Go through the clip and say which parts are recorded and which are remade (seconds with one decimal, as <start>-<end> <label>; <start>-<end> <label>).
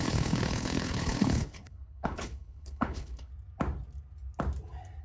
0.0-3.3 remade; 3.3-5.0 recorded